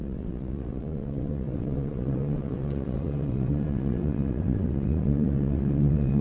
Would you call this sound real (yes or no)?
no